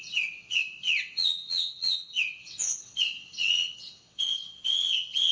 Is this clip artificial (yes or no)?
yes